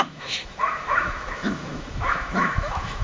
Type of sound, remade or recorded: remade